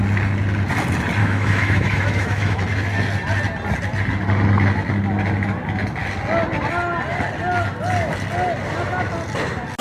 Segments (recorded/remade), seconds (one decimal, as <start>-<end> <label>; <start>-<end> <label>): 0.0-1.2 recorded; 1.2-2.6 remade; 2.6-9.8 recorded